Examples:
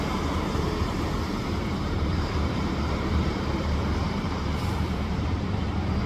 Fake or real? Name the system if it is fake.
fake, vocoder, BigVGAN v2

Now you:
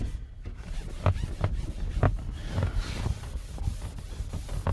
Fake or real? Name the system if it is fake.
real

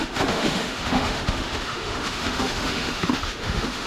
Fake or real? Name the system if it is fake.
fake, autoencoder, DAC-VAE